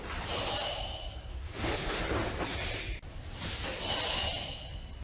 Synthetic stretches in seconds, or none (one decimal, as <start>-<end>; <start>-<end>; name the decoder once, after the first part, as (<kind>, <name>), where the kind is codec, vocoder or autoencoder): 1.3-2.0 (autoencoder, DAC-VAE)